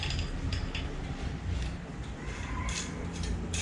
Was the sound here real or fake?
real